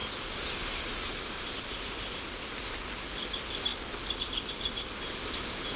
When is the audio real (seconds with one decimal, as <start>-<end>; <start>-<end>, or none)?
0.0-5.8

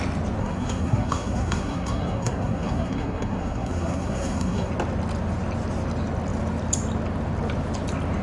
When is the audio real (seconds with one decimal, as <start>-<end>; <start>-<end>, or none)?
0.0-0.4; 4.7-8.2

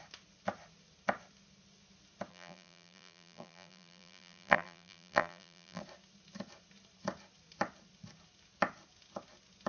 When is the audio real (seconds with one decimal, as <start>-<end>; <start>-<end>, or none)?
0.0-2.3; 5.8-9.7

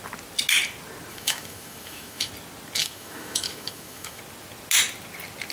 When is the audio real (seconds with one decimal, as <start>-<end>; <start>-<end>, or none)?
0.0-1.1; 2.3-2.8; 4.2-5.5

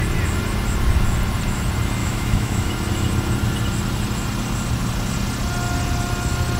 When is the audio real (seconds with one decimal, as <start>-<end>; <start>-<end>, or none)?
0.0-2.0; 2.7-6.6